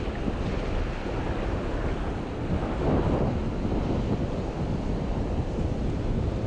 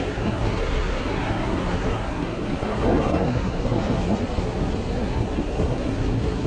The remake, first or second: second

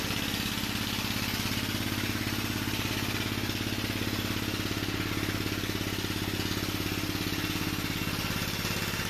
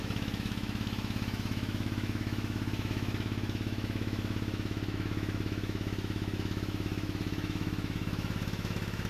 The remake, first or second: second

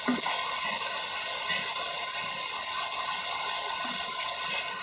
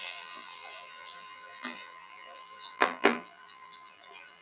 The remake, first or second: second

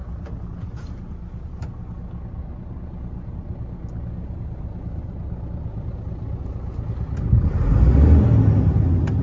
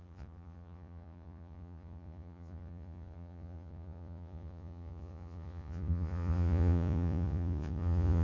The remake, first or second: second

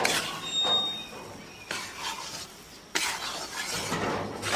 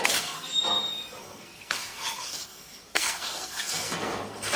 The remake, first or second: second